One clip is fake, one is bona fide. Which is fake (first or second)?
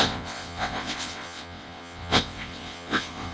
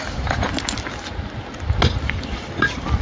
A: first